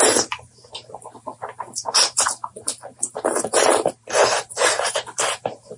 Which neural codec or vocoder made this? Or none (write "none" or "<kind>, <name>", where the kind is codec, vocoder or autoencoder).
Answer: vocoder, BigVGAN v2